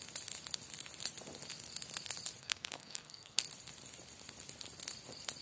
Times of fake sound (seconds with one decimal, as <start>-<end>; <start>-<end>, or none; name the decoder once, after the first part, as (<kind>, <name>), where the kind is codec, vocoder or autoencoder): 2.4-3.4 (codec, SNAC)